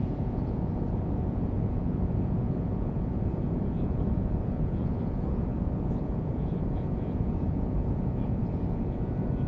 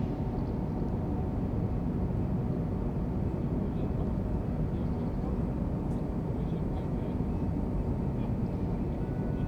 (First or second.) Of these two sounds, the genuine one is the second